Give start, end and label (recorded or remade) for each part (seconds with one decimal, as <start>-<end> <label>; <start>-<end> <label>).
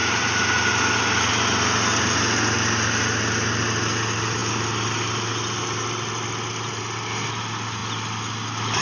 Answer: 0.0-8.8 recorded